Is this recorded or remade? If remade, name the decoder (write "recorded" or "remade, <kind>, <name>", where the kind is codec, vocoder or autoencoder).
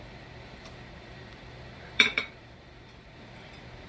remade, vocoder, BigVGAN v2